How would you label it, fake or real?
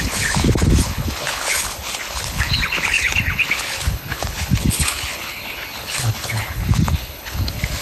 fake